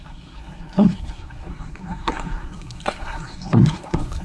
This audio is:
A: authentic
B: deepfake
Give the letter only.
B